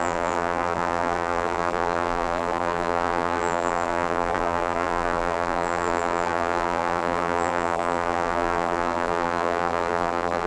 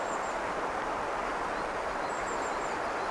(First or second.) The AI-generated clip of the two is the first